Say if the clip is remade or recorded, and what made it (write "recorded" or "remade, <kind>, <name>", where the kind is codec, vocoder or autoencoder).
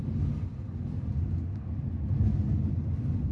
recorded